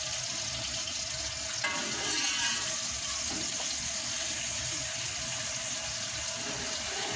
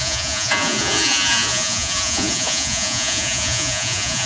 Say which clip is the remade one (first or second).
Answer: second